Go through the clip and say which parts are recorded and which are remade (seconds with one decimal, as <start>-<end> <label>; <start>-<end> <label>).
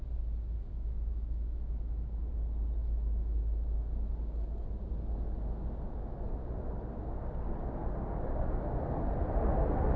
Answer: 0.0-0.7 recorded; 0.7-2.3 remade; 2.3-2.8 recorded; 2.8-3.4 remade; 3.4-10.0 recorded